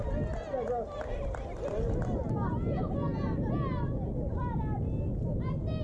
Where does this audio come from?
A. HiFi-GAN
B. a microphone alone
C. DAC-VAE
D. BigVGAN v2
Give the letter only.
B